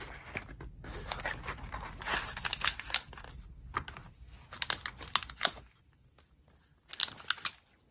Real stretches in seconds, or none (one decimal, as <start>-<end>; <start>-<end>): 0.0-7.9